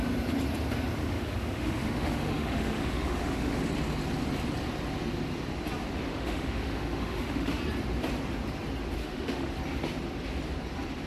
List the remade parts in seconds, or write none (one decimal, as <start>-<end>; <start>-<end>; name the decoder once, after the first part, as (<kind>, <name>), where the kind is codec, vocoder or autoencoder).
1.0-3.6 (autoencoder, DAC-VAE); 6.1-7.6; 9.0-9.5